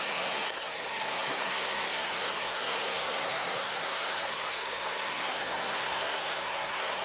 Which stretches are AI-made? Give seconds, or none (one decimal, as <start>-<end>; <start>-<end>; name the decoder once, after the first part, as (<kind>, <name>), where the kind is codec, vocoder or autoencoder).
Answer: 0.0-7.0 (codec, SNAC)